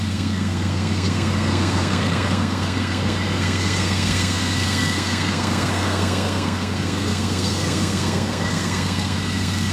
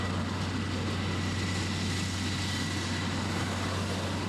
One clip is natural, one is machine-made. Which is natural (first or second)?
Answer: second